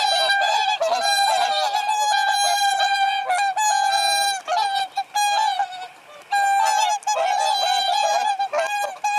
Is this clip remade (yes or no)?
no